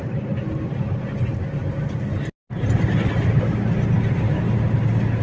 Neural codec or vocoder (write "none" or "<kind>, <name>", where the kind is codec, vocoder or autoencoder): none